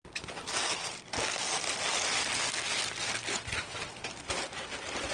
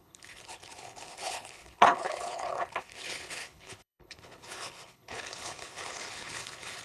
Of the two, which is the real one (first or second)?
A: first